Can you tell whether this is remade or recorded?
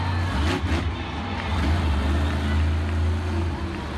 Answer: recorded